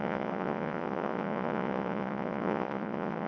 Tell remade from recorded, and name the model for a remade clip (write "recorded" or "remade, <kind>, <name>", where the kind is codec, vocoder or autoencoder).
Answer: remade, vocoder, Vocos